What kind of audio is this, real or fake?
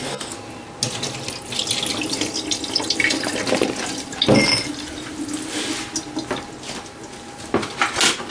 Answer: real